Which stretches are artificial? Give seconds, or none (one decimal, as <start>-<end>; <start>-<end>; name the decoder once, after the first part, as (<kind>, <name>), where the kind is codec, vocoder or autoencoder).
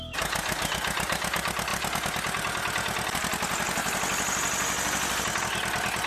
none